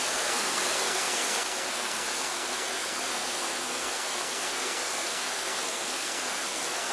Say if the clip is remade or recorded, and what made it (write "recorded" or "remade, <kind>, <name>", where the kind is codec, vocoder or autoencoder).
remade, codec, SNAC